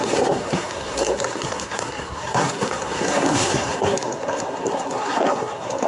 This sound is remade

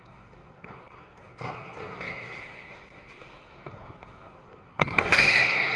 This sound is remade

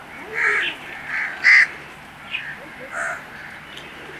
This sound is recorded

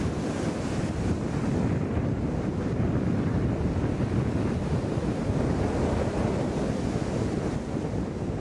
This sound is recorded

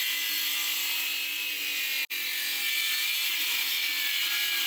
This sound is recorded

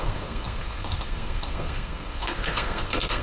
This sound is remade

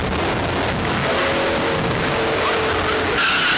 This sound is recorded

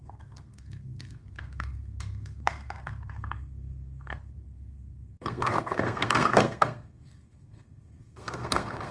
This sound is remade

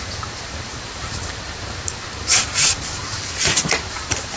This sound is remade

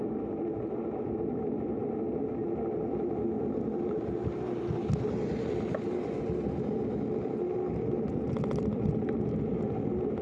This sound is recorded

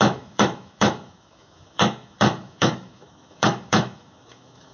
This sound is remade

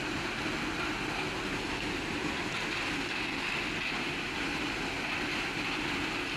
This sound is recorded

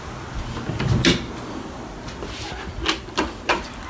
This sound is recorded